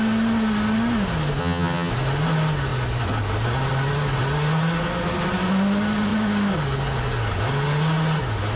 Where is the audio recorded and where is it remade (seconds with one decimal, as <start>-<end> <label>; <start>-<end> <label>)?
0.0-1.4 recorded; 1.4-1.9 remade; 1.9-8.6 recorded